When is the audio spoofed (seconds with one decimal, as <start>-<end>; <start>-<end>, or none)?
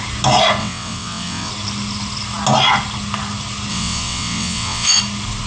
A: 0.6-1.5; 3.7-5.0